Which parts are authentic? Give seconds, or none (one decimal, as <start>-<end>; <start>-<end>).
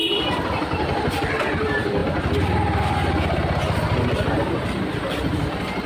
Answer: 1.4-5.9